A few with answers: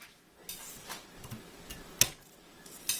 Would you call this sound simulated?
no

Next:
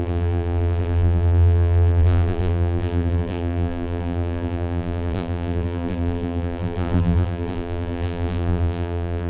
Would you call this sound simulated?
yes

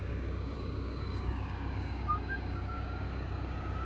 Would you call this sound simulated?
yes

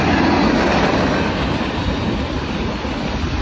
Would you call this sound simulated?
no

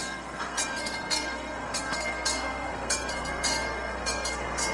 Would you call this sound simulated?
yes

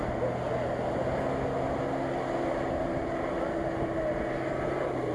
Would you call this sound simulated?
no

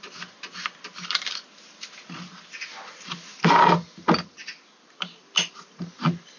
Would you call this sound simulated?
no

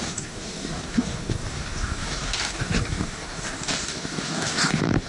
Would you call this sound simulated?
yes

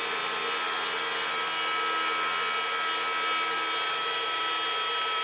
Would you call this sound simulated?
no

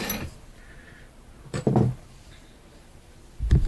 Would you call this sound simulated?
no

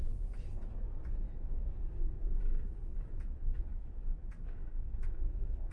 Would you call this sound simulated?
yes